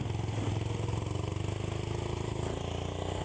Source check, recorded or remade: recorded